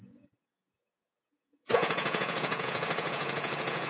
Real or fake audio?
fake